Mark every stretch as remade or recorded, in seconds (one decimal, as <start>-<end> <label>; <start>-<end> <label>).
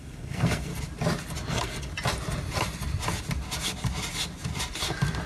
0.0-0.7 remade; 0.7-1.5 recorded; 1.5-1.9 remade; 1.9-5.3 recorded